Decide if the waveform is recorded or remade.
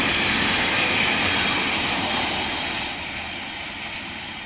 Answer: recorded